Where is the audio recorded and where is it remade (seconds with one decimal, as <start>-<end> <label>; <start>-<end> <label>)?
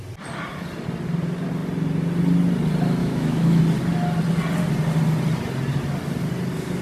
0.0-3.0 recorded; 3.0-3.6 remade; 3.6-6.8 recorded